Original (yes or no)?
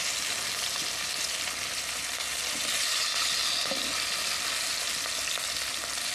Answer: yes